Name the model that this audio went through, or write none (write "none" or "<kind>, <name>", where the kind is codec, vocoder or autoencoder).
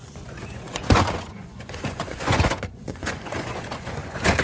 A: vocoder, Vocos